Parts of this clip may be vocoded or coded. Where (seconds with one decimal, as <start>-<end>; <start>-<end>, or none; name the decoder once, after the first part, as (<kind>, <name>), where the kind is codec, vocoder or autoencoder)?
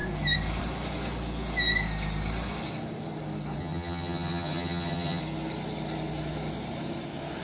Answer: 3.6-5.2 (vocoder, HiFi-GAN)